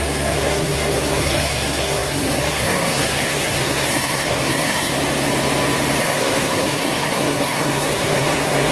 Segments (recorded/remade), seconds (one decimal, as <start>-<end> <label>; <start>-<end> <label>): 0.0-4.9 remade; 4.9-6.0 recorded; 6.0-8.7 remade

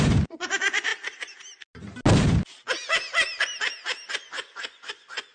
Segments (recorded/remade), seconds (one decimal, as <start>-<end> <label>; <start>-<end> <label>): 0.0-0.9 remade; 0.9-4.1 recorded; 4.1-5.3 remade

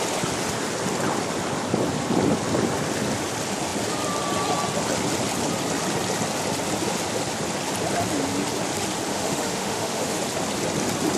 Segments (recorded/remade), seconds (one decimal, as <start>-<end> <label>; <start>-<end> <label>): 0.0-9.1 recorded; 9.1-10.2 remade; 10.2-11.2 recorded

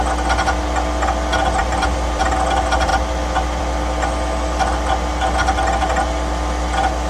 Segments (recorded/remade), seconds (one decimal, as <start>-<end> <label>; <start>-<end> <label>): 0.0-1.6 recorded; 1.6-2.2 remade; 2.2-7.1 recorded

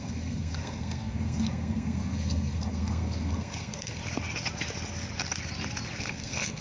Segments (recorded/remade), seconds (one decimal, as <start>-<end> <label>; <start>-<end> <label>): 0.0-4.0 remade; 4.0-6.0 recorded; 6.0-6.6 remade

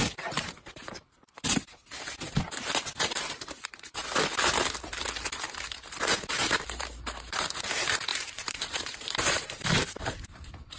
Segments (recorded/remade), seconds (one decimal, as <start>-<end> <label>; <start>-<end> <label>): 0.0-0.8 remade; 0.8-3.0 recorded; 3.0-4.0 remade; 4.0-6.4 recorded; 6.4-10.8 remade